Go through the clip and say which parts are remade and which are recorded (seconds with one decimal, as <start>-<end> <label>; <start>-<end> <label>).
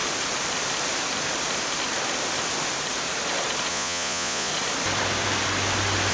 0.0-3.7 recorded; 3.7-4.5 remade; 4.5-6.1 recorded